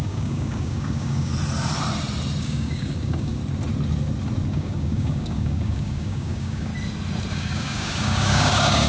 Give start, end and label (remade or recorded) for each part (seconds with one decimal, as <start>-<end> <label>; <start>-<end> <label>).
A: 0.0-1.3 remade; 1.3-2.4 recorded; 2.4-3.4 remade; 3.4-4.5 recorded; 4.5-6.7 remade; 6.7-7.3 recorded; 7.3-8.9 remade